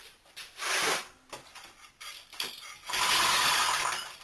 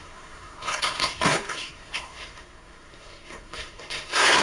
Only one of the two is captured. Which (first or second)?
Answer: first